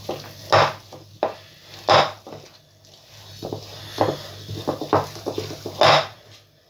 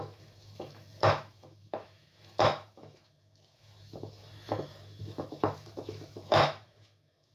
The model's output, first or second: second